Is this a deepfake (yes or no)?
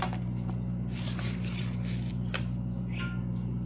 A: no